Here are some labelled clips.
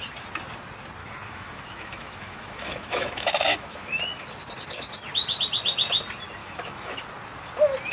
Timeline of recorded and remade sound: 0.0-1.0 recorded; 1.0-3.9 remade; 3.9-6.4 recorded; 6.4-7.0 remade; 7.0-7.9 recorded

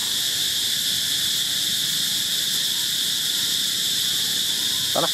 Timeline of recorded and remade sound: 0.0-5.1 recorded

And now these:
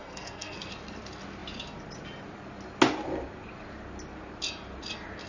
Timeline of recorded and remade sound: 0.0-0.7 remade; 0.7-5.3 recorded